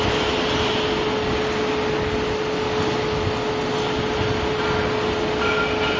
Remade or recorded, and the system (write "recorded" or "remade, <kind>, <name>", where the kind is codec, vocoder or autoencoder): recorded